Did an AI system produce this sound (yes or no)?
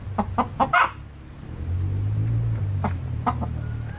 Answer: no